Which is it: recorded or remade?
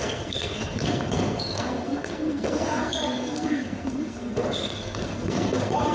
remade